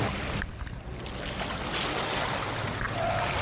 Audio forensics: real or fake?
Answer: real